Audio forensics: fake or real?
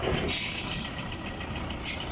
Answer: fake